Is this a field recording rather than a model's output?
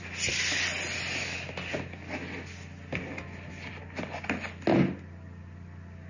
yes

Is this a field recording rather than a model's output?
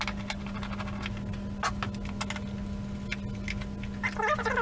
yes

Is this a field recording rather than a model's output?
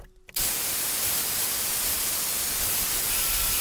yes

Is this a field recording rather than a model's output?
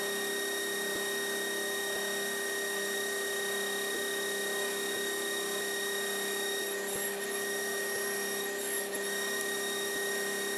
yes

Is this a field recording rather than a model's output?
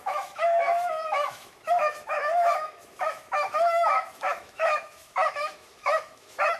no